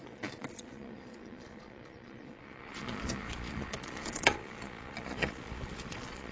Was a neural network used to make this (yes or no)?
yes